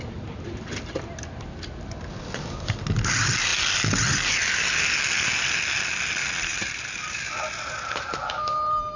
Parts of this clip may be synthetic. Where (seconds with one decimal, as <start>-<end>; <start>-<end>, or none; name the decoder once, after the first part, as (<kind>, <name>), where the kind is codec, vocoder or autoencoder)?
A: none